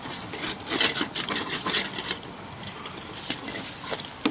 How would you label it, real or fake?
real